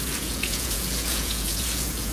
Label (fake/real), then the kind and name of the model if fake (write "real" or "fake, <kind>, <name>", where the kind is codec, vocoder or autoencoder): fake, vocoder, Vocos